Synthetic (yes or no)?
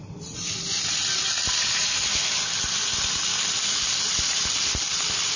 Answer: no